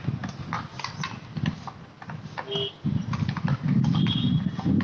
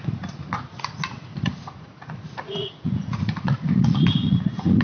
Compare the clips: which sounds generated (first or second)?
second